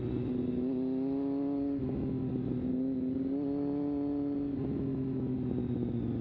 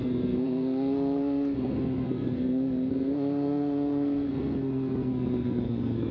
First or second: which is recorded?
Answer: first